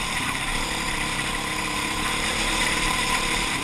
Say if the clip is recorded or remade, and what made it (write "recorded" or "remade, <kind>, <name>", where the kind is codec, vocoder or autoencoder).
remade, vocoder, BigVGAN v2